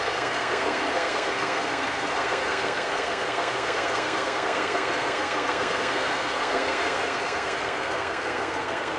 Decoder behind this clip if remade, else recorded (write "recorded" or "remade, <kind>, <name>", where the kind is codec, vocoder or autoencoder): remade, codec, SNAC